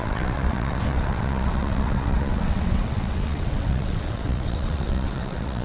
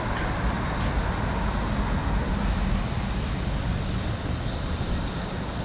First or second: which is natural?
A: second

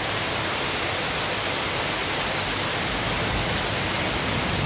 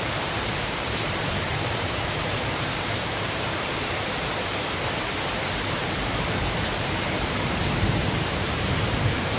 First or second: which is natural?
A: first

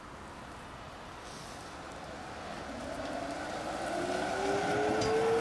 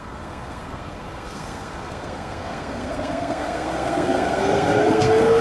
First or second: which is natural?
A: first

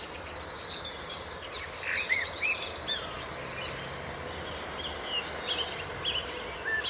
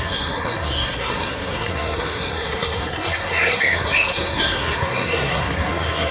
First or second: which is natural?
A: first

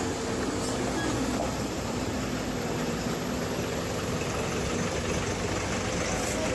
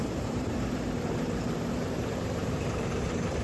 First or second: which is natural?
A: first